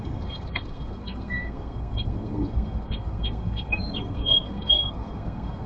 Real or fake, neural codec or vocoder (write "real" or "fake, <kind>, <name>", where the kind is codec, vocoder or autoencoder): fake, codec, SNAC